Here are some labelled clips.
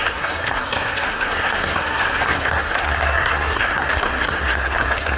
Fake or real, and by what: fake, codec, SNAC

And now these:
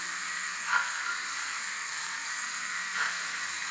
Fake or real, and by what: fake, codec, SNAC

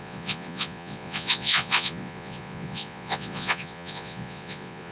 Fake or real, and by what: fake, vocoder, Vocos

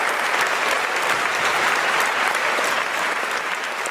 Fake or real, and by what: fake, vocoder, BigVGAN v2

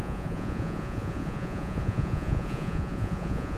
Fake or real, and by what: fake, vocoder, Vocos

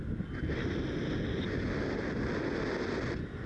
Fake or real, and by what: real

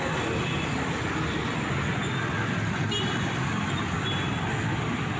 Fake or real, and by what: real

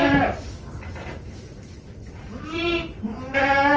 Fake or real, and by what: real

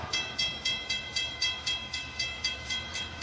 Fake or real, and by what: fake, autoencoder, DAC-VAE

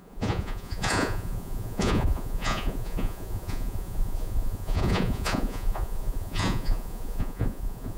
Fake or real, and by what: fake, vocoder, Vocos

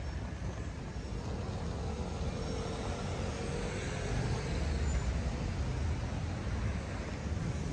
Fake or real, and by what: real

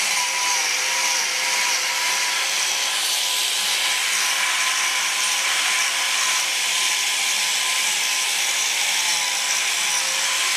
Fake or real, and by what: real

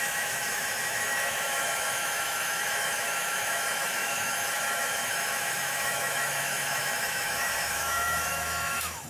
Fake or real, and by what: fake, autoencoder, DAC-VAE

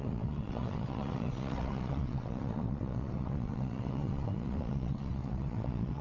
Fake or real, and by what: fake, vocoder, WaveNeXt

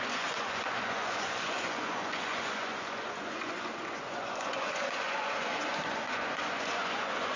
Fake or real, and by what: fake, vocoder, Vocos